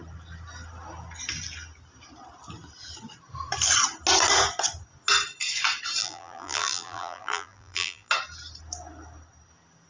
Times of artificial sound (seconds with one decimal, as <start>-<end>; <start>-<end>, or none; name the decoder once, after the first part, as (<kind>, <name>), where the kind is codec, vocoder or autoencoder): 6.0-8.1 (vocoder, BigVGAN v2)